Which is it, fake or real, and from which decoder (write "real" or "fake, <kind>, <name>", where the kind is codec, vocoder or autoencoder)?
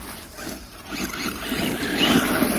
real